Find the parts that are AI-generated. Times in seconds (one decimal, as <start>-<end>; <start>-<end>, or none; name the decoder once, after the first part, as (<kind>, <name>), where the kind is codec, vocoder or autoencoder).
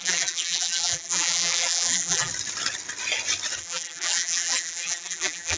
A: 0.0-2.3 (vocoder, BigVGAN v2); 3.6-5.6